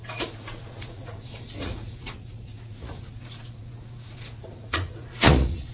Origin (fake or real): fake